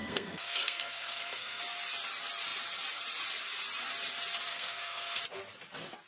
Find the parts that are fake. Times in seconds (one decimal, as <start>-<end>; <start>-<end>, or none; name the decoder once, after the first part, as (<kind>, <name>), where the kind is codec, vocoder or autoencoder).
0.0-1.6 (codec, SNAC); 4.5-5.2